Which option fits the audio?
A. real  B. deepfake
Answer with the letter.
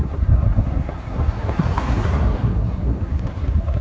B